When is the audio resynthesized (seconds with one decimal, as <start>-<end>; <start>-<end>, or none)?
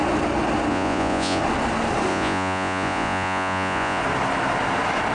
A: 0.7-1.4; 2.1-4.0